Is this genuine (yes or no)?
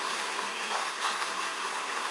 no